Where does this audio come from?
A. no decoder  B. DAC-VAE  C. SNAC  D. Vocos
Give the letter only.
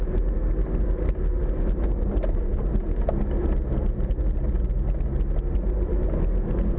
A